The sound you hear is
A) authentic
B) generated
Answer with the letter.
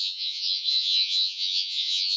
B